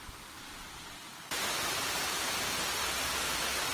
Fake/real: real